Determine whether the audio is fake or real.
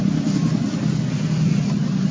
real